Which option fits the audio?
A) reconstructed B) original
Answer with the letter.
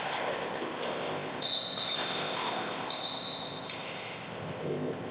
A